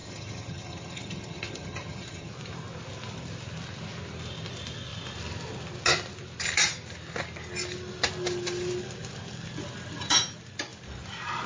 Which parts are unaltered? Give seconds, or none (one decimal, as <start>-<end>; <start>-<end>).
2.3-11.5